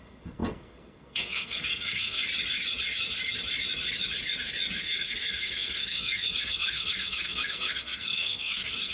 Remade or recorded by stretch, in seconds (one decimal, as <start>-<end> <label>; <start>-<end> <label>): 0.0-2.2 remade; 2.2-4.8 recorded; 4.8-8.9 remade